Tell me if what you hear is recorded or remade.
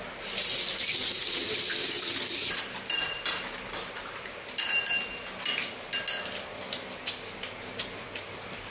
recorded